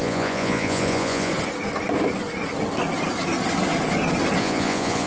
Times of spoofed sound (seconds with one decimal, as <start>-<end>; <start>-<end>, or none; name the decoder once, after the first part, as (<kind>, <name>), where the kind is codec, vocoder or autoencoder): 0.0-1.3 (vocoder, Vocos); 4.4-5.1